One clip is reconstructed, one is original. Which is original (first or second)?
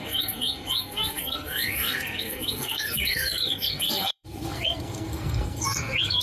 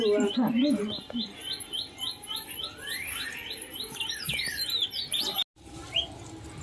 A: second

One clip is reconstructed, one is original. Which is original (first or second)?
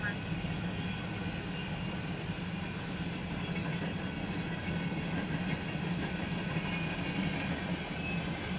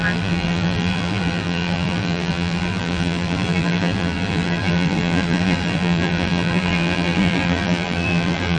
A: first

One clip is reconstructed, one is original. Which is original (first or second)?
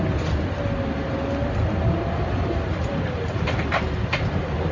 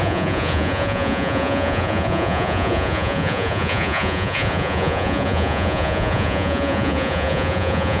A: first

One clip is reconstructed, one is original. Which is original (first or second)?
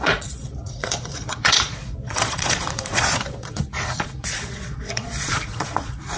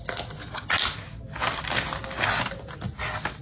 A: second